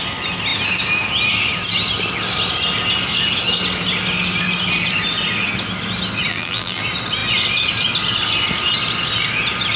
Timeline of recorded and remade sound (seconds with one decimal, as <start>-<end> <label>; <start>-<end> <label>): 0.0-6.3 recorded; 6.3-6.8 remade; 6.8-9.8 recorded